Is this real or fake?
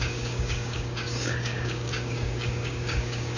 fake